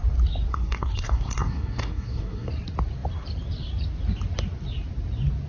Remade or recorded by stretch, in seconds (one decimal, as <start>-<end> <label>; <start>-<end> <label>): 0.0-0.5 recorded; 0.5-2.5 remade; 2.5-5.5 recorded